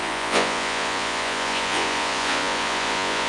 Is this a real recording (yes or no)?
no